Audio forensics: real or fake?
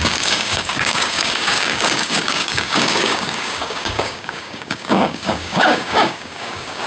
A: fake